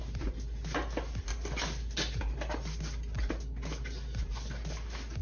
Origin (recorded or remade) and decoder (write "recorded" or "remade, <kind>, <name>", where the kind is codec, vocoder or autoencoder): recorded